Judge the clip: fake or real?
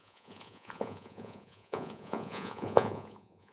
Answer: fake